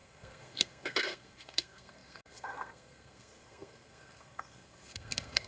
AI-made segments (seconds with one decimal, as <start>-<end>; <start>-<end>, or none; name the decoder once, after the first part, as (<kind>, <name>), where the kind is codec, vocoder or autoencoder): 0.0-5.5 (codec, SNAC)